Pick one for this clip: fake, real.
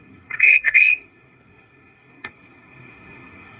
fake